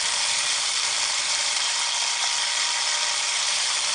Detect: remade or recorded remade